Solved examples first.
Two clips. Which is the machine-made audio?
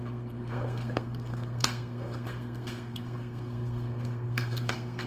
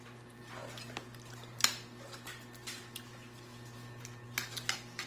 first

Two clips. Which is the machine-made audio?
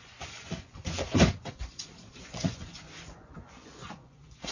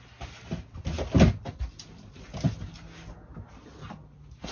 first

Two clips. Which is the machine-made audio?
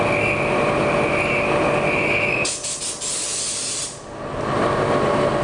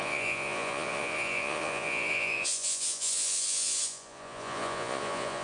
second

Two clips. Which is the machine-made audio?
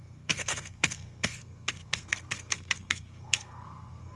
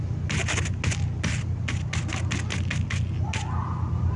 first